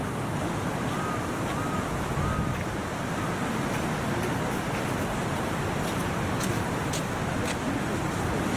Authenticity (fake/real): real